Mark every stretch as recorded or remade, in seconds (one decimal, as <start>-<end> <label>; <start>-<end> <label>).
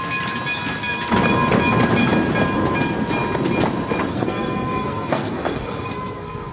0.0-4.1 recorded; 4.1-6.5 remade